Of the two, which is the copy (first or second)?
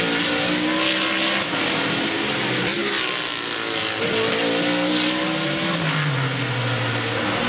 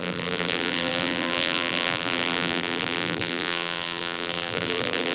second